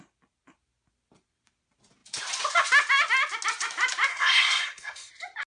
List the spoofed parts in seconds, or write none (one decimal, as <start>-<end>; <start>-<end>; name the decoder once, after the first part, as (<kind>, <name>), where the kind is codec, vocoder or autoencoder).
4.1-5.1 (codec, SNAC)